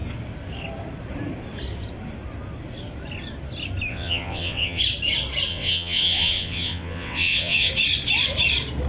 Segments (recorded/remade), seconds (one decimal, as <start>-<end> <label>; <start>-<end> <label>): 0.0-3.9 recorded; 3.9-4.8 remade; 4.8-5.5 recorded; 5.5-7.7 remade; 7.7-8.9 recorded